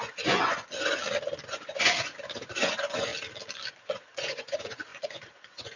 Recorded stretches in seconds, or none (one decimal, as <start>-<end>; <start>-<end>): 1.0-1.5; 3.1-3.7